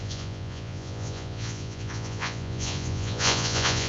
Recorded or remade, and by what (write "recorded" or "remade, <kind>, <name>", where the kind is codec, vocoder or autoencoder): remade, vocoder, Vocos